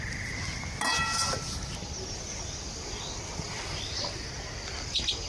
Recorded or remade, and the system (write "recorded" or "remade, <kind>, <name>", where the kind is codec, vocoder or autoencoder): recorded